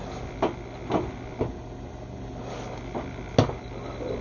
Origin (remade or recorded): recorded